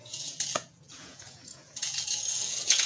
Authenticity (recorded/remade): remade